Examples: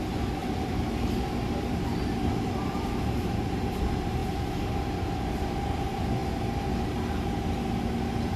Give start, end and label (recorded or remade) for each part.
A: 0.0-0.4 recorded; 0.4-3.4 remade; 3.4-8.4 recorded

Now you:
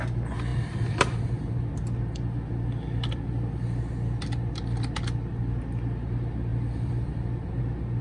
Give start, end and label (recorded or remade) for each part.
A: 0.0-6.5 recorded; 6.5-7.6 remade; 7.6-8.0 recorded